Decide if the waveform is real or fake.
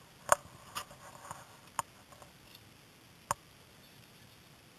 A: real